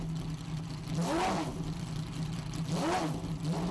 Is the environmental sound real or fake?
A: real